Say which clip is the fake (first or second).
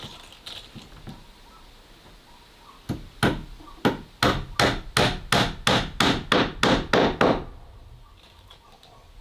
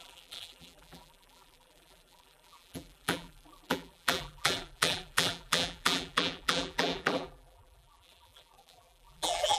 second